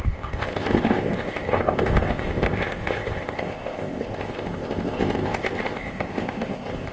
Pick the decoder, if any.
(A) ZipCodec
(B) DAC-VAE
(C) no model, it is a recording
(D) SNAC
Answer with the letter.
A